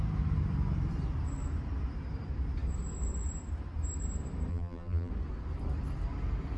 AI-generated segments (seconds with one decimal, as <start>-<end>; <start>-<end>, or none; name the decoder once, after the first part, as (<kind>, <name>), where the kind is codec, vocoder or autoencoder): 4.5-5.1 (vocoder, BigVGAN v2)